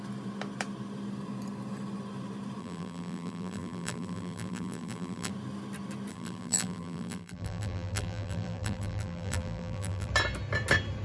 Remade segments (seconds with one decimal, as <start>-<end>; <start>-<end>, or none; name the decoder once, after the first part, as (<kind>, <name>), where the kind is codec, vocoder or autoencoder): 2.6-5.3 (vocoder, BigVGAN v2); 6.1-10.1